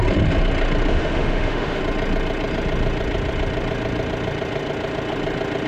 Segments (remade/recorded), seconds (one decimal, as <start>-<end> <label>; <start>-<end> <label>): 0.0-0.9 recorded; 0.9-1.8 remade; 1.8-5.7 recorded